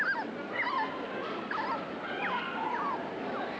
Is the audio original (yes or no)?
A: yes